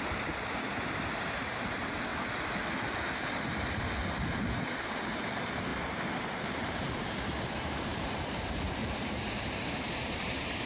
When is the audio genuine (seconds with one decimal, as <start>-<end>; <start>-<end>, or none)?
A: 2.1-4.9; 5.7-6.3